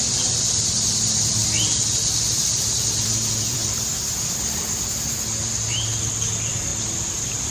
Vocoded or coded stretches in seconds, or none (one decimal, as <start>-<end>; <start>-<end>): 0.0-7.5